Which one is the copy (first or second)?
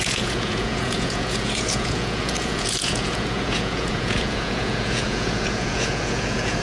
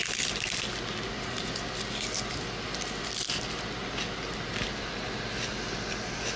first